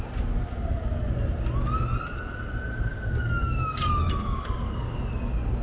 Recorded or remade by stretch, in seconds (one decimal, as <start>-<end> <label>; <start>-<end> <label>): 0.0-2.9 recorded; 2.9-5.1 remade; 5.1-5.6 recorded

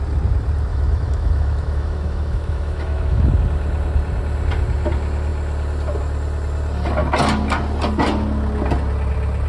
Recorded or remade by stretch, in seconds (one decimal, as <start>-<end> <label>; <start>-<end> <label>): 0.0-0.7 recorded; 0.7-3.3 remade; 3.3-9.5 recorded